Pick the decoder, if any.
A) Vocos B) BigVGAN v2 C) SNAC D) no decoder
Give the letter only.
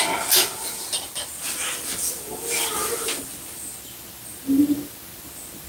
D